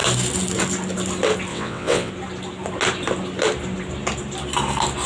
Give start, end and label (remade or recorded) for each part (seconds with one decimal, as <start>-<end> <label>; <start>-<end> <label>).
0.0-1.5 recorded; 1.5-2.1 remade; 2.1-5.1 recorded